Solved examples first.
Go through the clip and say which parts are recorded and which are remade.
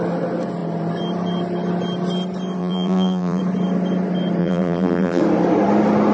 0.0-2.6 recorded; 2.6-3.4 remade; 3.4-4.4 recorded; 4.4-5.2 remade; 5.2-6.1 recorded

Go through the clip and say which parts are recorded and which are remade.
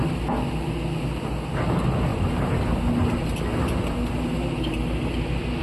0.0-2.1 recorded; 2.1-2.6 remade; 2.6-5.6 recorded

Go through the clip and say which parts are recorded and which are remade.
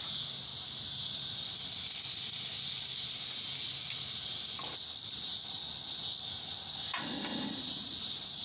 0.0-7.3 recorded; 7.3-8.4 remade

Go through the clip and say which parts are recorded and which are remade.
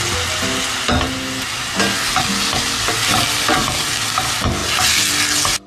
0.0-5.7 recorded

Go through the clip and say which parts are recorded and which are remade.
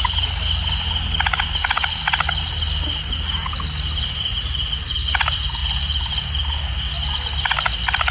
0.0-4.4 recorded; 4.4-5.1 remade; 5.1-5.6 recorded; 5.6-6.6 remade; 6.6-8.1 recorded